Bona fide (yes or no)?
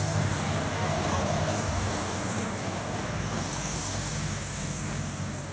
no